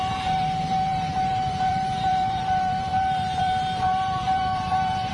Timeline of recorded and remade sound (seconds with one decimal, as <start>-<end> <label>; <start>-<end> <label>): 0.0-5.1 remade